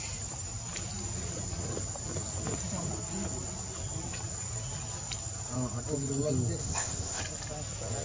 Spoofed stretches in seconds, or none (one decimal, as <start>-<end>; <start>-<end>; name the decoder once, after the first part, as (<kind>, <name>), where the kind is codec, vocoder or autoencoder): 6.6-7.2 (codec, ZipCodec)